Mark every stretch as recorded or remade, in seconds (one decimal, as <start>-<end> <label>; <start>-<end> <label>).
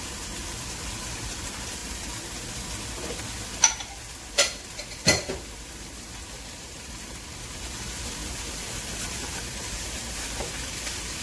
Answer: 0.0-1.8 remade; 1.8-4.2 recorded; 4.2-11.2 remade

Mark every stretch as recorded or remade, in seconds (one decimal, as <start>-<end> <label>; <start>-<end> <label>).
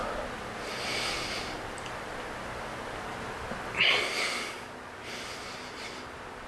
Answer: 0.0-6.5 remade